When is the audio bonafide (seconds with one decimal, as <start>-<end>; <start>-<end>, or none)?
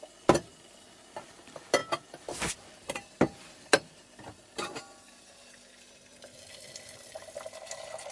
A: 0.0-8.1